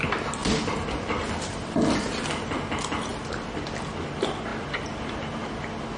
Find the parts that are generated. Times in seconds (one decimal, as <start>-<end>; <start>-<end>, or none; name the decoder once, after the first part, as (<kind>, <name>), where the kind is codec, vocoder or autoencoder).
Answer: 0.4-1.8 (vocoder, BigVGAN v2); 3.1-3.9

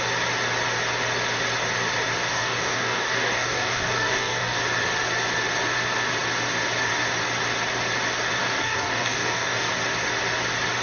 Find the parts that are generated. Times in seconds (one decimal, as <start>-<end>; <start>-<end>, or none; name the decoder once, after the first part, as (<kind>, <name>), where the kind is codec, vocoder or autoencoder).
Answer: 2.3-4.6 (codec, DAC); 8.4-9.7

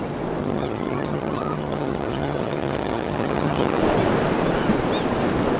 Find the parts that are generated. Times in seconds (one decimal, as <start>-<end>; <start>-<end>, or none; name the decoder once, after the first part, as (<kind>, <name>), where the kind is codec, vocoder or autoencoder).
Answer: 0.4-3.8 (vocoder, HiFi-GAN)

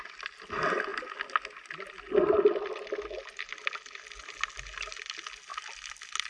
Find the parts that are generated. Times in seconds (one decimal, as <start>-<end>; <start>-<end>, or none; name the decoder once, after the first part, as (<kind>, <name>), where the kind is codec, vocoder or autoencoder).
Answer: none

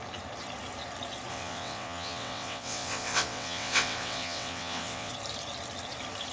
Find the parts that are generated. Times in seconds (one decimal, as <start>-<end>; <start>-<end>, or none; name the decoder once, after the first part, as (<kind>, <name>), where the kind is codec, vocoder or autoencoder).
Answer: 1.3-5.1 (vocoder, WaveNeXt)

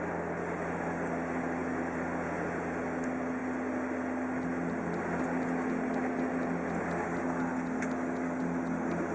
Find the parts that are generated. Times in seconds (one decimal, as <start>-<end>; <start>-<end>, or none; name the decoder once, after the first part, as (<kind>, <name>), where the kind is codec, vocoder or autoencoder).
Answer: none